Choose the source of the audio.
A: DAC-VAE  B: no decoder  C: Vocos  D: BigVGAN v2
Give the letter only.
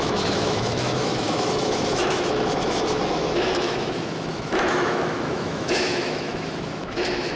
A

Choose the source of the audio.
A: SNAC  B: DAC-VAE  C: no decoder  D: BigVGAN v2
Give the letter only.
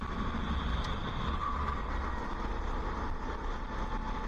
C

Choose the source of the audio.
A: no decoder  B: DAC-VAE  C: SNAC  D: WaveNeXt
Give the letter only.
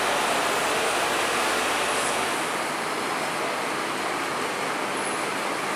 A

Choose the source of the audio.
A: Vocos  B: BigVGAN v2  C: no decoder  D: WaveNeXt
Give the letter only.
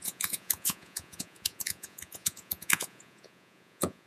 A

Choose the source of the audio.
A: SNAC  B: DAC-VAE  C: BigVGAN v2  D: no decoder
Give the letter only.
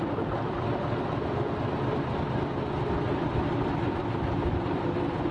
D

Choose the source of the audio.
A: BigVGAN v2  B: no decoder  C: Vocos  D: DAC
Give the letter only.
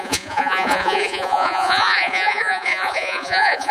C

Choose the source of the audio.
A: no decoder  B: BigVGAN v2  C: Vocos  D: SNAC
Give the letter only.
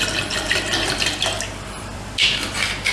B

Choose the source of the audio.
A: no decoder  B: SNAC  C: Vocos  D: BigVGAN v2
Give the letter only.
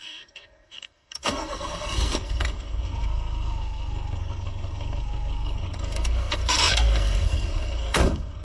B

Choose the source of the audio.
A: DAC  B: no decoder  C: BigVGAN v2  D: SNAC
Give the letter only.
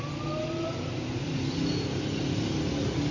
B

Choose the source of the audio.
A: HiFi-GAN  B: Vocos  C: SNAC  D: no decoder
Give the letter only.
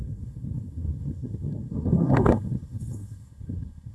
C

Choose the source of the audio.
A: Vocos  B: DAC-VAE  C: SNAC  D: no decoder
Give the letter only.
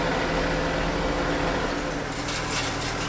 D